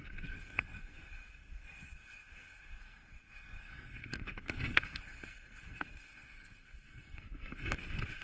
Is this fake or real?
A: fake